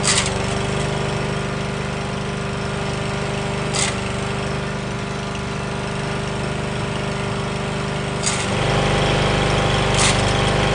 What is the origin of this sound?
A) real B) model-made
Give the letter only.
A